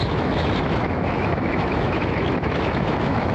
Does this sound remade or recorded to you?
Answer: remade